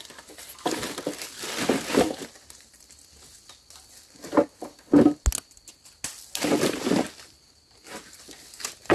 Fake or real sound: real